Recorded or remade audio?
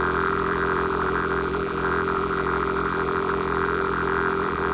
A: remade